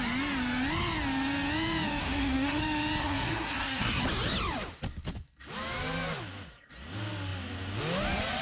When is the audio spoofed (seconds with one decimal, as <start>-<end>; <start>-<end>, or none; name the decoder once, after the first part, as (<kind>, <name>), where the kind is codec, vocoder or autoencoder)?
2.0-2.6 (codec, SNAC); 3.0-4.0